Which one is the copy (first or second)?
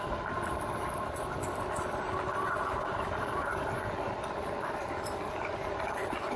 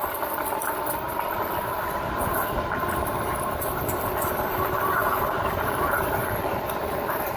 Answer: second